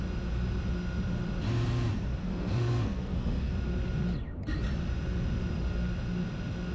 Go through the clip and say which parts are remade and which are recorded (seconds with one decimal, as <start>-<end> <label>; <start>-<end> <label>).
0.0-2.2 recorded; 2.2-3.5 remade; 3.5-6.7 recorded